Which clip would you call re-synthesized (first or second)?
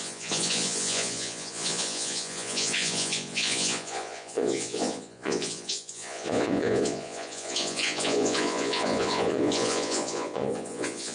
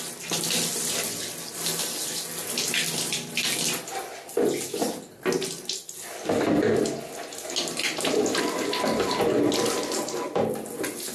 first